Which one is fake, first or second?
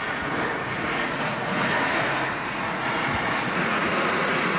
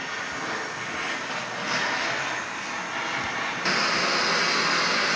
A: first